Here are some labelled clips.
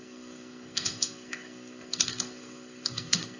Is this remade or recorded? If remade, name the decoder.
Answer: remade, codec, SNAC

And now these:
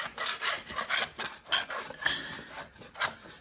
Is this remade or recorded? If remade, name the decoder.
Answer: recorded